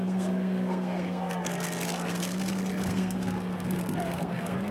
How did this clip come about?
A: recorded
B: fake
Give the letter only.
B